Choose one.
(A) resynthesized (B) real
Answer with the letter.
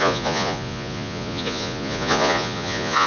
A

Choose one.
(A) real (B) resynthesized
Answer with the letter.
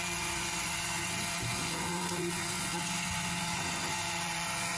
B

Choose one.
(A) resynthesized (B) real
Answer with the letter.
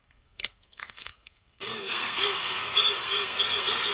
A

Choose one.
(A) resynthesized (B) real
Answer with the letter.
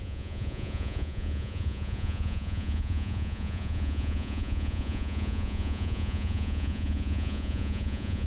A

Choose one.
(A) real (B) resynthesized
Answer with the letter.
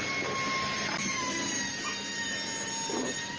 A